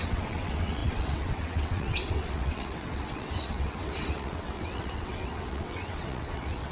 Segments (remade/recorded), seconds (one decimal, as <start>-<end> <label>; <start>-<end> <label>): 0.0-6.7 remade

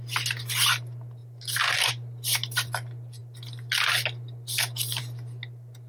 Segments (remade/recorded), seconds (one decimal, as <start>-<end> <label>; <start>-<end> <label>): 0.0-5.9 recorded